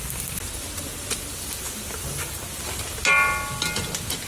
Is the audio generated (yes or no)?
no